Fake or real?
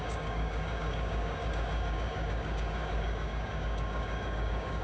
fake